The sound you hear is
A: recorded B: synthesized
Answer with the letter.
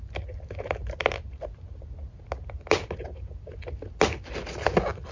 A